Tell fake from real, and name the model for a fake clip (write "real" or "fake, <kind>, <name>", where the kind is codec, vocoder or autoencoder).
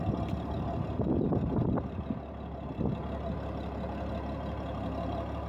real